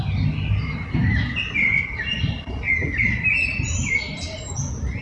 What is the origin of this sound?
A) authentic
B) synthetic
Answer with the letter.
A